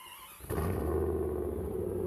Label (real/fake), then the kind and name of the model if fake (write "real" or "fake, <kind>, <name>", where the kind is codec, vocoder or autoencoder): real